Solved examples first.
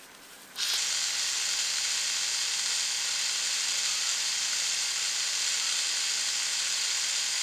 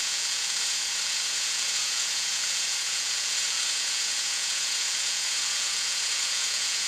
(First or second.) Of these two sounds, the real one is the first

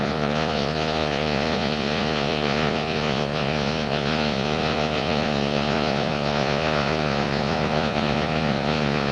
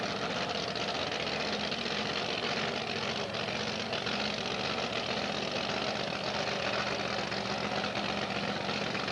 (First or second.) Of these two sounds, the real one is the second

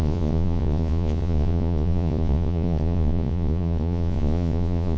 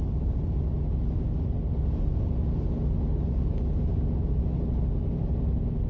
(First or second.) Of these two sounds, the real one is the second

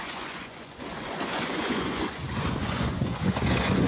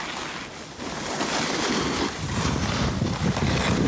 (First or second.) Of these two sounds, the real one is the second